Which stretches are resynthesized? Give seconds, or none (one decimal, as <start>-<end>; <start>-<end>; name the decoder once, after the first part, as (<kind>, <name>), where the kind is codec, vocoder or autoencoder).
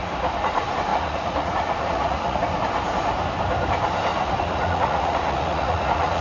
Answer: 0.9-2.4 (vocoder, Vocos); 4.1-6.2